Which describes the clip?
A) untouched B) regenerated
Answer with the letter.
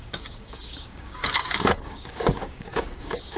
B